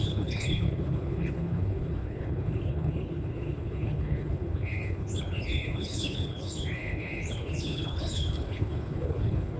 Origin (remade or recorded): remade